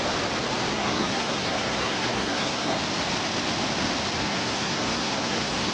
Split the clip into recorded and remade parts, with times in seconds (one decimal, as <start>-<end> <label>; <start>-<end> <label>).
0.0-0.7 recorded; 0.7-2.8 remade; 2.8-4.2 recorded; 4.2-5.7 remade